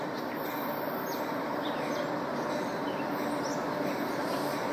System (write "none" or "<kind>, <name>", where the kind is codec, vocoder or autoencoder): none